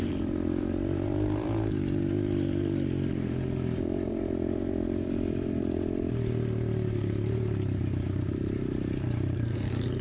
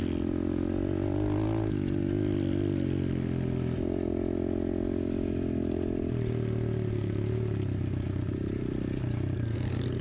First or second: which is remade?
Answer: first